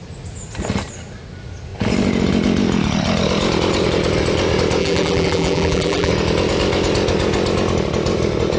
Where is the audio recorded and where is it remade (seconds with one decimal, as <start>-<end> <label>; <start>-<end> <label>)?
0.0-4.8 recorded; 4.8-6.1 remade; 6.1-8.6 recorded